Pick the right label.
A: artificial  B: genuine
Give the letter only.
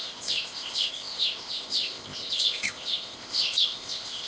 A